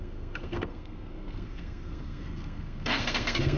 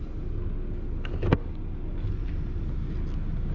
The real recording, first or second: second